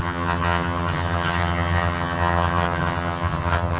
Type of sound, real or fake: fake